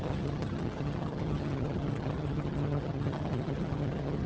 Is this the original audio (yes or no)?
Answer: no